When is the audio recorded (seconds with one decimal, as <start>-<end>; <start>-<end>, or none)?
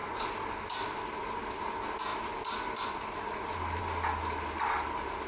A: 0.0-5.3